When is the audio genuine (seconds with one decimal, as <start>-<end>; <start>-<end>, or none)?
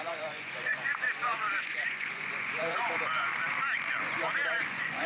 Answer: 3.3-4.0